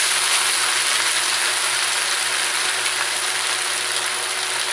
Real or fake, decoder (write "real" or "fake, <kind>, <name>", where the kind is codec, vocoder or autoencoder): real